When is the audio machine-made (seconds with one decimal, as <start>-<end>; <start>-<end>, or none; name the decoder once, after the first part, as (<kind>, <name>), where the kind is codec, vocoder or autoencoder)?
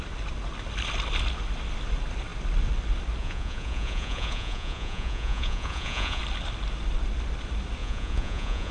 3.2-6.2 (vocoder, Vocos); 7.8-8.7